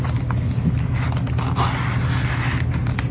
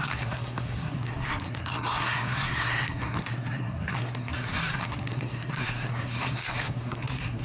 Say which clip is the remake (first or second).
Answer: second